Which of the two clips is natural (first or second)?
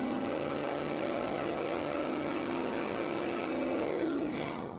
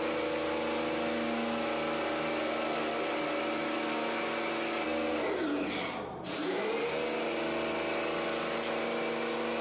second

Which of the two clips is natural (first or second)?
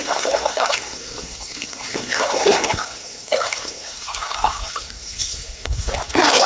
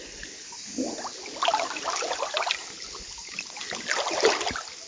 second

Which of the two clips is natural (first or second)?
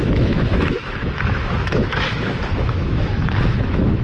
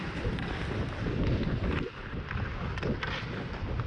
second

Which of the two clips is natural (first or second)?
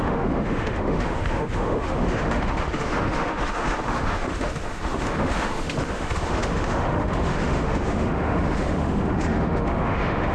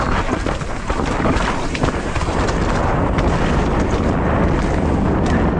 second